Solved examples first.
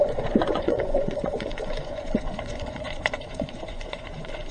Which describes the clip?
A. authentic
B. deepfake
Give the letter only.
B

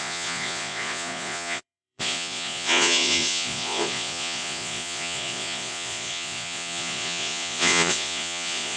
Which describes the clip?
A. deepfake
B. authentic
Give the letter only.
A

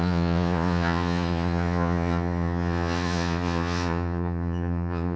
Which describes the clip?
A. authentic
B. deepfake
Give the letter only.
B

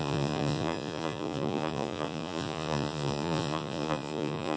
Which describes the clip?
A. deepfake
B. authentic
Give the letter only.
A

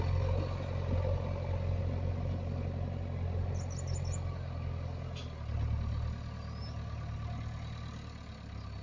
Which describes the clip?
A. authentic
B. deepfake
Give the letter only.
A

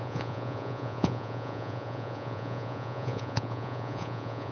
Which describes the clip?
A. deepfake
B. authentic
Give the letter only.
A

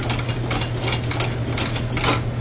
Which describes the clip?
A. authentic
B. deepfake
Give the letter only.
A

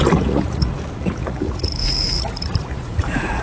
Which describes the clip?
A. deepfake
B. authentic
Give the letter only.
A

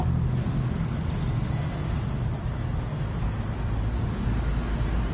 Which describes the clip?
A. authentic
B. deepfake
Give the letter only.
A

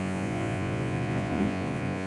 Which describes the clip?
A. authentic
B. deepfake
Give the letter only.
B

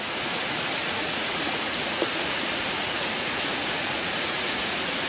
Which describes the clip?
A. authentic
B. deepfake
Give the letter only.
B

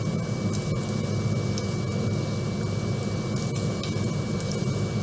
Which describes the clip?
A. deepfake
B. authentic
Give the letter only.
B